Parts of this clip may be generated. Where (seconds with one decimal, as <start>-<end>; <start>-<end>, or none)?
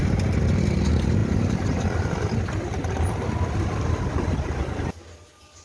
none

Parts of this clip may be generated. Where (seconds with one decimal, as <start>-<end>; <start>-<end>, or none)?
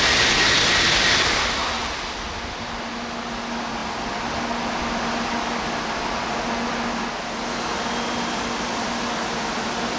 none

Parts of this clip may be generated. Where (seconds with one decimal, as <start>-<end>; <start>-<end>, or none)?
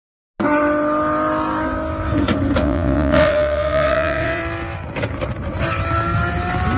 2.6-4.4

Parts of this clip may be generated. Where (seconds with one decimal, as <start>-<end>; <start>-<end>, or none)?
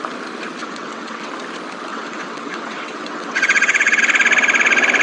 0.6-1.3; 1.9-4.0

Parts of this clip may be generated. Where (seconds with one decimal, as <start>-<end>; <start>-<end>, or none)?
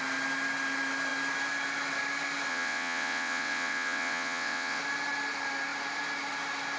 2.5-4.8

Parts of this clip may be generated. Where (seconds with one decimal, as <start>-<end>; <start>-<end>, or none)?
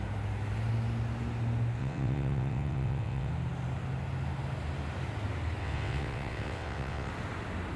1.8-3.3; 5.6-7.1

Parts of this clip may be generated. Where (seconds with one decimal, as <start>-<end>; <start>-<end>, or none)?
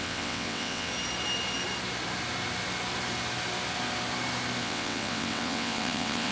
0.0-0.9; 4.6-6.3